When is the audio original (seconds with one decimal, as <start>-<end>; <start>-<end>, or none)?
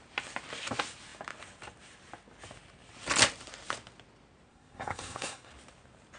0.0-4.5; 5.5-6.2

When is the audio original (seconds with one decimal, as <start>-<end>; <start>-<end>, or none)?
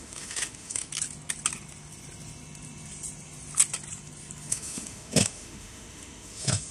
0.9-4.5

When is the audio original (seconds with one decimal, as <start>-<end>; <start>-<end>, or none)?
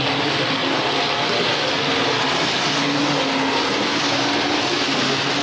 0.0-5.4